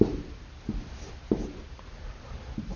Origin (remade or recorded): recorded